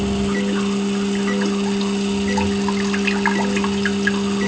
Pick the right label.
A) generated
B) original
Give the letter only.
B